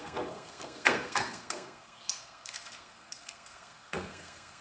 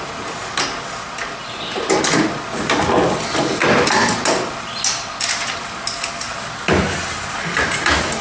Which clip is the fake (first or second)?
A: first